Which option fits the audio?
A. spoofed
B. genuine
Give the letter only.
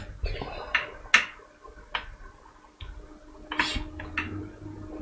B